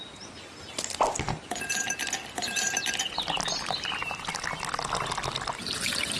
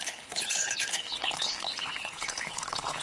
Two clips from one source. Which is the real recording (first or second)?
first